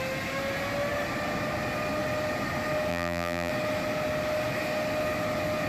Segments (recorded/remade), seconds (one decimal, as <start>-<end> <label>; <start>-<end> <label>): 0.0-2.9 recorded; 2.9-3.5 remade; 3.5-5.7 recorded